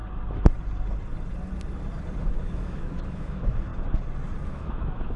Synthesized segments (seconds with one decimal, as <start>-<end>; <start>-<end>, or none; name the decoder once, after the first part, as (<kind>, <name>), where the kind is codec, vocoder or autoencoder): 2.2-3.7 (autoencoder, DAC-VAE); 4.5-5.2